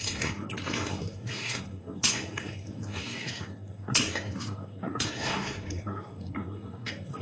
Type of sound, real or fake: fake